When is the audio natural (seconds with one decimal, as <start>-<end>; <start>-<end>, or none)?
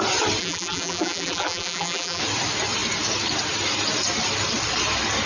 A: 0.0-0.4; 2.2-5.3